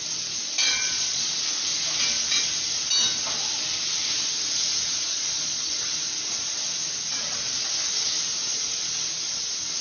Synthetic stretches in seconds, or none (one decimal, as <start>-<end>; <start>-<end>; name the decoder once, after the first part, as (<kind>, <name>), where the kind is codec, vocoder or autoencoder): 0.6-1.3 (vocoder, Vocos); 5.1-5.7